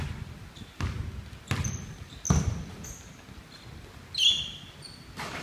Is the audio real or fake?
real